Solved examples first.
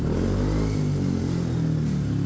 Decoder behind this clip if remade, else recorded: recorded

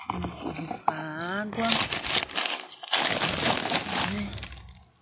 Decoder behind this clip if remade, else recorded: recorded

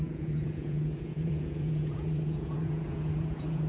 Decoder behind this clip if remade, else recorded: remade, vocoder, Vocos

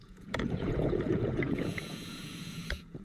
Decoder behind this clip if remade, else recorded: remade, vocoder, Vocos